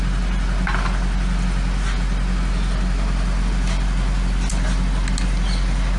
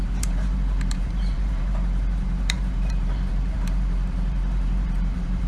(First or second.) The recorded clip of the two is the first